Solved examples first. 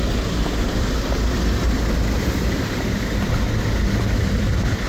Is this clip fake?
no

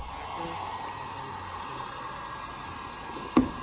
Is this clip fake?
no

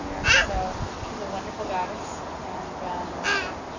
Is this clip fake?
no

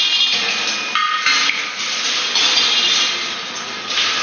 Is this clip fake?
no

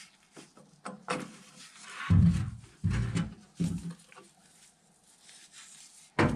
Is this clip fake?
no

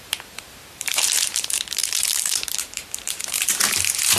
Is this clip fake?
yes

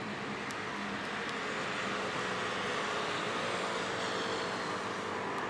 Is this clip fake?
no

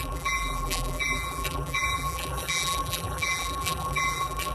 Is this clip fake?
yes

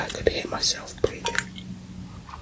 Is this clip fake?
no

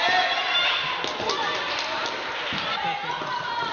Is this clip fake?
no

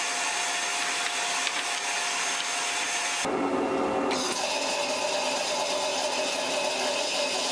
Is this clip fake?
no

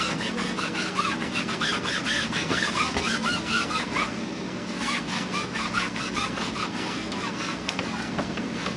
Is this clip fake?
yes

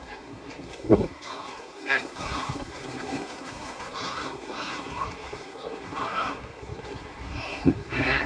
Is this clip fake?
yes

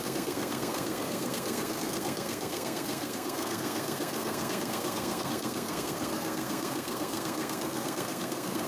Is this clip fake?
yes